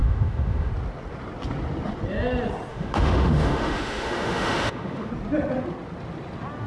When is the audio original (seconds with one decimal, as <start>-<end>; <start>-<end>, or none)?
0.7-2.7; 5.1-6.7